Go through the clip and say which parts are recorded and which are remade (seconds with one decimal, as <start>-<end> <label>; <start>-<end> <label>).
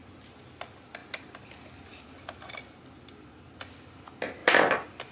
0.0-5.1 recorded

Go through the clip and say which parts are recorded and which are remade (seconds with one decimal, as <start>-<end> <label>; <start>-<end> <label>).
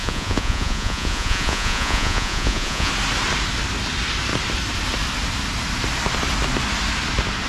0.0-2.9 remade; 2.9-7.5 recorded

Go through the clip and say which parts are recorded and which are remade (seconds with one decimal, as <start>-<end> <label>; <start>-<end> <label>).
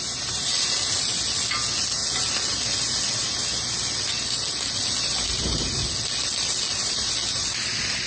0.0-8.1 recorded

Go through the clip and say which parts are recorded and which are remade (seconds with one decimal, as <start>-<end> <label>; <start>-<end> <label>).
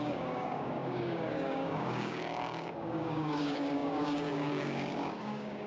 0.0-5.7 remade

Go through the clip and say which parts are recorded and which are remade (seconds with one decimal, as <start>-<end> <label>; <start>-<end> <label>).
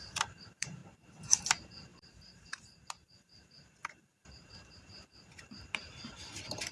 0.0-0.8 remade; 0.8-1.4 recorded; 1.4-6.7 remade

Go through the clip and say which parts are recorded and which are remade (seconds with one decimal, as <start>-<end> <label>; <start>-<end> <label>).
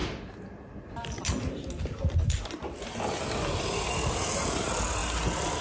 0.0-5.6 recorded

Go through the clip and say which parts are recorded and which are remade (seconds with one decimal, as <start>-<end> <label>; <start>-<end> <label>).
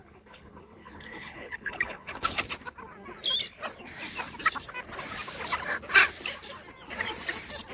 0.0-2.4 remade; 2.4-7.7 recorded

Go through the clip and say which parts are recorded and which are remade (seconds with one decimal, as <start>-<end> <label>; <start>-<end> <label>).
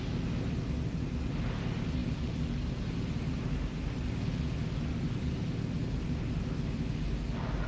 0.0-7.7 recorded